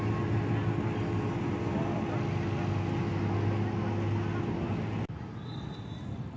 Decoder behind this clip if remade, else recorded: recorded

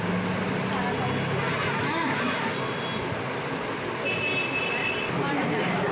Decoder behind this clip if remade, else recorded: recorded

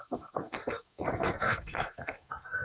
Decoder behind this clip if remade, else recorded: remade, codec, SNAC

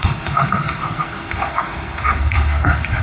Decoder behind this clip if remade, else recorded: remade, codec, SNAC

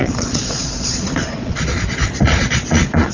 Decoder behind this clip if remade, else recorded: remade, vocoder, Vocos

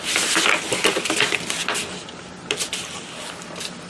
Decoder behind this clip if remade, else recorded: recorded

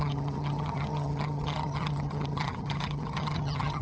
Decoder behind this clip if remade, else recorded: remade, vocoder, HiFi-GAN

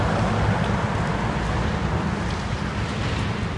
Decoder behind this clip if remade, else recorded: recorded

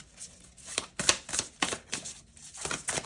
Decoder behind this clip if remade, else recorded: recorded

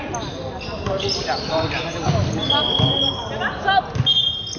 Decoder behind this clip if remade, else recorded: recorded